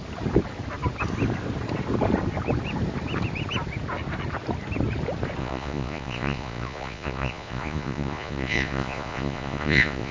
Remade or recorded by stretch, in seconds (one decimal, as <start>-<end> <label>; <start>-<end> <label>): 0.0-5.4 recorded; 5.4-10.1 remade